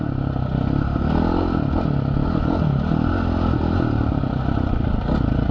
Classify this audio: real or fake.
real